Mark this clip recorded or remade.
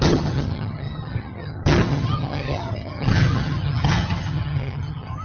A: remade